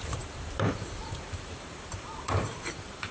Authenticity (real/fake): fake